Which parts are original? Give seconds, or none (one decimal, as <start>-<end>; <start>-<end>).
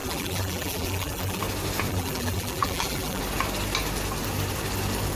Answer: 1.4-1.9; 3.2-5.2